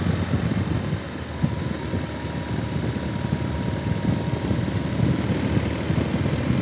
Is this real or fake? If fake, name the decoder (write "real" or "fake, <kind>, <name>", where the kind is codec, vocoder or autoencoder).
real